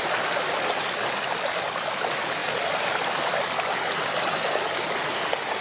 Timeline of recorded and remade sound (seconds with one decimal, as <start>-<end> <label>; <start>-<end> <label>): 0.0-5.6 recorded